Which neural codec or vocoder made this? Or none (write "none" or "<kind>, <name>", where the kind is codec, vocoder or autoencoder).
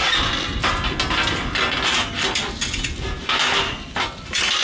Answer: none